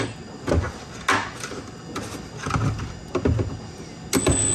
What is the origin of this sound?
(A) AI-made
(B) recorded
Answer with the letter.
B